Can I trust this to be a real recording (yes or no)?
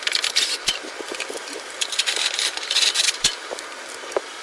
no